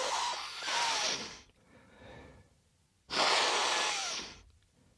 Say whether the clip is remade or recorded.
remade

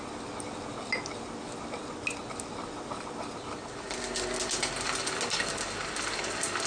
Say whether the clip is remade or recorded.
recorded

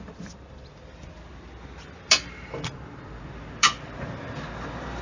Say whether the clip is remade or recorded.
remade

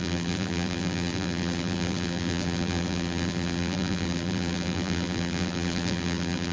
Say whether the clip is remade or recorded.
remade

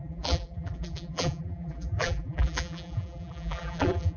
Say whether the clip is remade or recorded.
remade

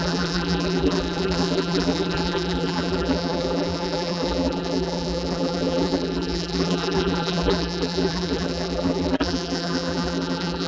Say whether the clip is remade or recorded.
remade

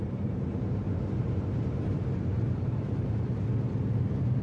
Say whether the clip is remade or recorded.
remade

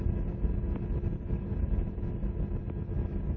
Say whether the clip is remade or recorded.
recorded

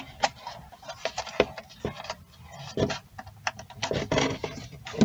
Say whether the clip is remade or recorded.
recorded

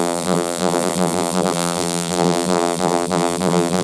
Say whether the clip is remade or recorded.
remade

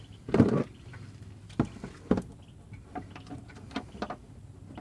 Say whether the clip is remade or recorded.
remade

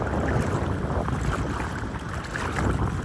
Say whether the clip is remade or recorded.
recorded